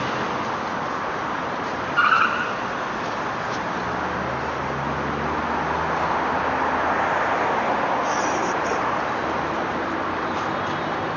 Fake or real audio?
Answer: real